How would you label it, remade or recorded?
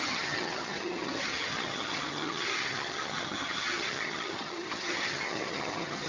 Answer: remade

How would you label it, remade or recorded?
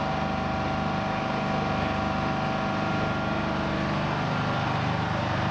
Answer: recorded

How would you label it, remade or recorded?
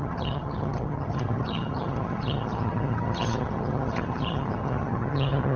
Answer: remade